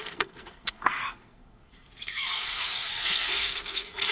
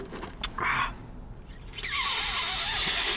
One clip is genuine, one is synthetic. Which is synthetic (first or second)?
first